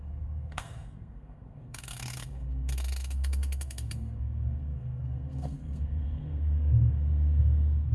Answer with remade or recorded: remade